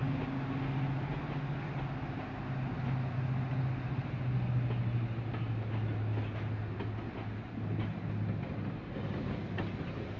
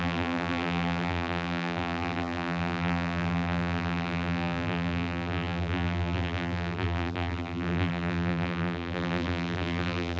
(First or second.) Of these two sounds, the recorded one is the first